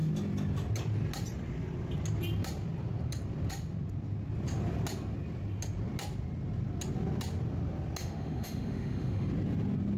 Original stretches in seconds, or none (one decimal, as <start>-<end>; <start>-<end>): 0.0-8.0; 9.3-10.0